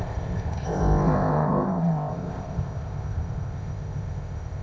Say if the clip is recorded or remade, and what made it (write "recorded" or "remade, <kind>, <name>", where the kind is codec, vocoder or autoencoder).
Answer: remade, codec, ZipCodec